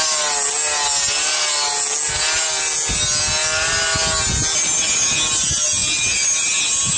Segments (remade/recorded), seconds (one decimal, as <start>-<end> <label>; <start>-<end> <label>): 0.0-5.8 recorded; 5.8-6.5 remade; 6.5-7.0 recorded